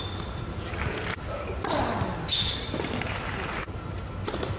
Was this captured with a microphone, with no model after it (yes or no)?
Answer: yes